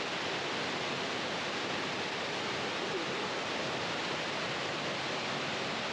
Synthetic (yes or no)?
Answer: no